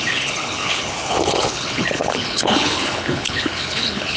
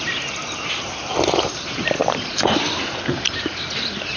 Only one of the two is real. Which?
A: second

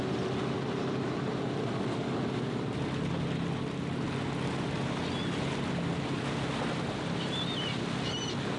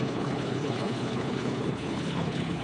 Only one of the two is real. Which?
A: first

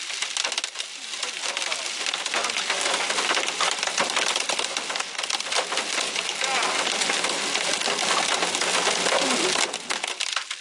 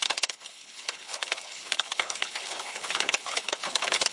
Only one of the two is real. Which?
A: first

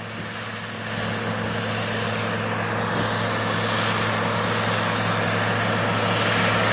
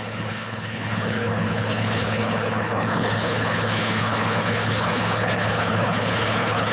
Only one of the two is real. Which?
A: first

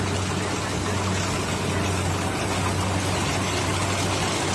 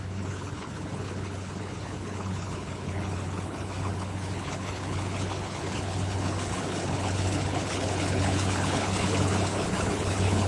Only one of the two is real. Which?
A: first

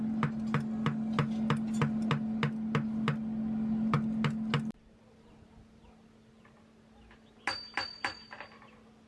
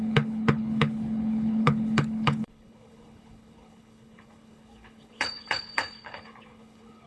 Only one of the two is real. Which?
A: first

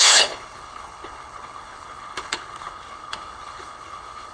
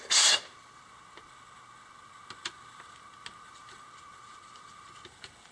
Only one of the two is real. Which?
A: second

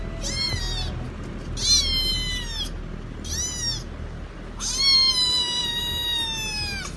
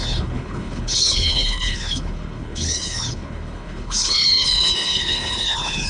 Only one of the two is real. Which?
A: first